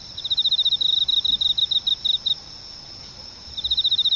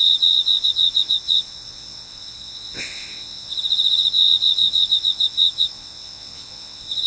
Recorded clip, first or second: first